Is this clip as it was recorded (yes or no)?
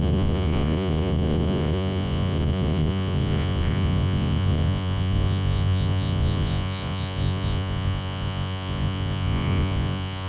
no